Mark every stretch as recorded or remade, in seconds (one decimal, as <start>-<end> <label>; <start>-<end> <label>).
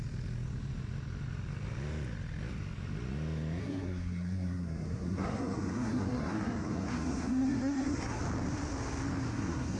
0.0-3.6 recorded; 3.6-8.2 remade; 8.2-9.3 recorded; 9.3-9.8 remade